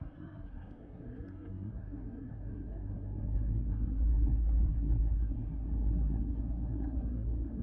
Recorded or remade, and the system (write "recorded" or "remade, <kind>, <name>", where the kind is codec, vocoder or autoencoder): remade, codec, SNAC